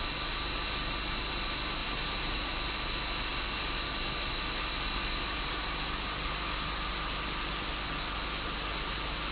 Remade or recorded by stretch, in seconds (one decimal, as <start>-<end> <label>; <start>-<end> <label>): 0.0-1.8 recorded; 1.8-2.5 remade; 2.5-9.3 recorded